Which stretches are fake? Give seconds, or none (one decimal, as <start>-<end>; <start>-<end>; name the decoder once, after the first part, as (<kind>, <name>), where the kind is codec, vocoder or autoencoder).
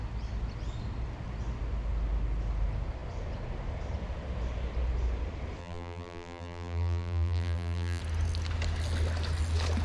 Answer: 5.6-8.0 (vocoder, BigVGAN v2)